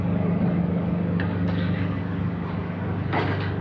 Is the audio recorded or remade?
remade